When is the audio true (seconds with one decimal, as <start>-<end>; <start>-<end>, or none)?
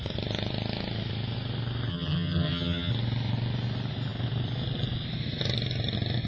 0.0-1.9; 2.9-6.3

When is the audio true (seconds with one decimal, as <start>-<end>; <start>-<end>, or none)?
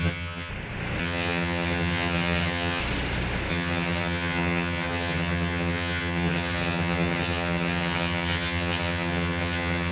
0.5-1.0; 2.8-3.5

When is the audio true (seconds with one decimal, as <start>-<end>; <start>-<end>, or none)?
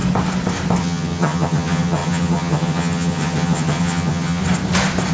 0.0-0.8; 4.4-5.1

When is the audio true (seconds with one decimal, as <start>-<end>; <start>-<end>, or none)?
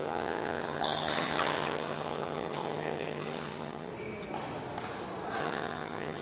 3.9-5.4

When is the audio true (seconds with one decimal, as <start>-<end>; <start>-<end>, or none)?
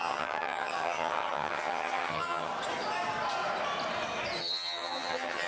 2.5-4.4